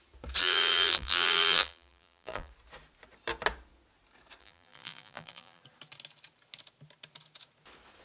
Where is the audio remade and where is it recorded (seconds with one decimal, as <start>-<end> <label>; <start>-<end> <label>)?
0.0-0.4 recorded; 0.4-2.5 remade; 2.5-4.4 recorded; 4.4-5.6 remade; 5.6-8.0 recorded